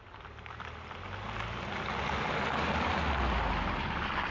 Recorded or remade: recorded